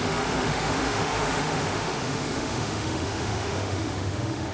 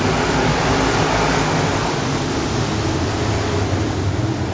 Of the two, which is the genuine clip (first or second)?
second